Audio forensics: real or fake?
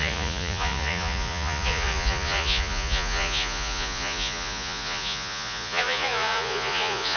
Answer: fake